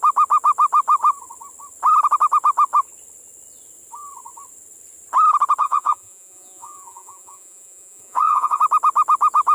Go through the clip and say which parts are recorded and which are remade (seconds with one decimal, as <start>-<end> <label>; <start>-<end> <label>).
0.0-5.6 recorded; 5.6-8.6 remade; 8.6-9.5 recorded